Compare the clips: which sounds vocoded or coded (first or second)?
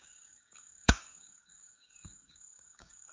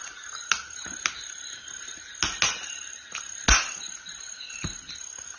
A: first